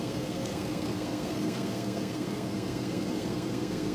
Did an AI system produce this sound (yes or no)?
yes